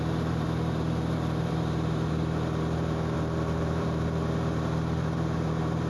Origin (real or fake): fake